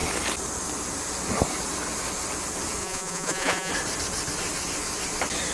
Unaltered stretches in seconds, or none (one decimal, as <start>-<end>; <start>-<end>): 0.0-2.8; 3.7-5.5